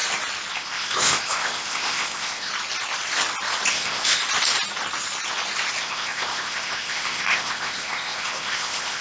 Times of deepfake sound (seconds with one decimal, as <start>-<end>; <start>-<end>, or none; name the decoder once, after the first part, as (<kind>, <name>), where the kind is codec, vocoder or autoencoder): 0.5-2.5 (codec, ZipCodec); 3.7-4.2; 5.8-9.0